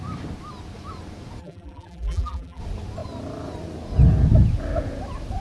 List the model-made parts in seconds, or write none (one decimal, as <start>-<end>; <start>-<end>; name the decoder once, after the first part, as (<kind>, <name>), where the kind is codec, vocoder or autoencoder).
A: 1.4-2.6 (vocoder, BigVGAN v2)